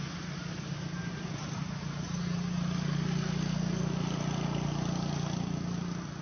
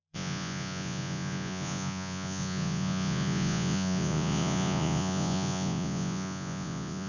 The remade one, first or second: second